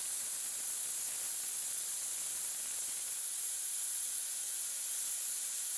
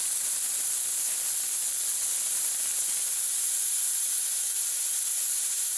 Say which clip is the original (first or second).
first